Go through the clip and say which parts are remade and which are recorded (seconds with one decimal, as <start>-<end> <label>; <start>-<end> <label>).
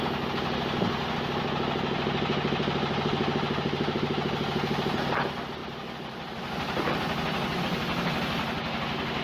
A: 0.0-5.6 recorded; 5.6-7.6 remade; 7.6-9.2 recorded